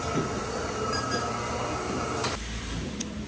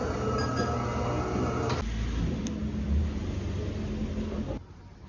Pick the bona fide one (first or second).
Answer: second